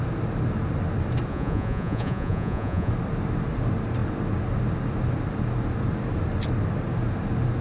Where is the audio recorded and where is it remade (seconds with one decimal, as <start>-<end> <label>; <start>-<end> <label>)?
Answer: 0.0-1.3 recorded; 1.3-2.9 remade; 2.9-7.6 recorded